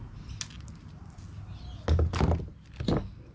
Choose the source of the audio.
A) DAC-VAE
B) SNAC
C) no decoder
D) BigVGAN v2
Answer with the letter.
C